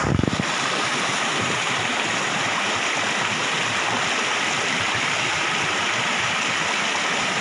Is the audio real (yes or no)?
yes